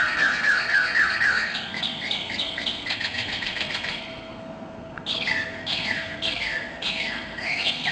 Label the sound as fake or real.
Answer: fake